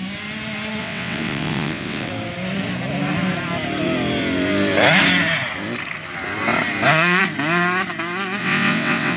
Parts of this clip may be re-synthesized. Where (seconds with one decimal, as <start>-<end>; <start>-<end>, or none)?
0.8-2.1; 8.4-9.2

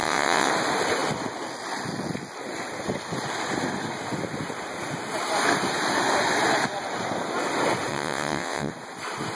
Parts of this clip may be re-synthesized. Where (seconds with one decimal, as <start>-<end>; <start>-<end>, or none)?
0.0-0.5; 7.9-8.7

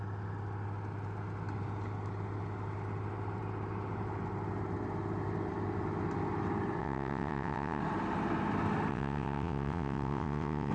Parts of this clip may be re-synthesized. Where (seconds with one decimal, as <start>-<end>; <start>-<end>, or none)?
6.8-7.8; 8.9-10.7

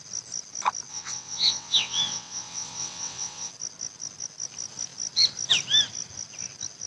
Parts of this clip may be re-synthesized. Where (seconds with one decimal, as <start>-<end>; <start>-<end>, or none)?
0.9-3.5